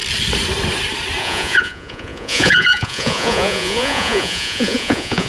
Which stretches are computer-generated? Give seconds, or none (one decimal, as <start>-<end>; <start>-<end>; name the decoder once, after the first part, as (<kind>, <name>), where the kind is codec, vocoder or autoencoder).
1.2-5.3 (vocoder, Vocos)